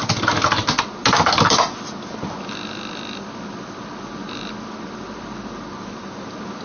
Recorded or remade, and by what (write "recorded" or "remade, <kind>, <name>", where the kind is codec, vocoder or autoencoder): recorded